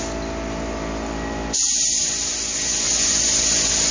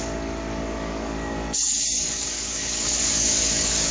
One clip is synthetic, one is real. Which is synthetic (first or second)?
second